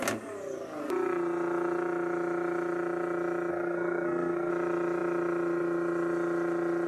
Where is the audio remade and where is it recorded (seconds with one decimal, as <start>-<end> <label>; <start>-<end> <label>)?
0.0-3.5 recorded; 3.5-4.5 remade; 4.5-6.9 recorded